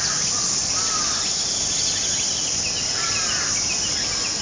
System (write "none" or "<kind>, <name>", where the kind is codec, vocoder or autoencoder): none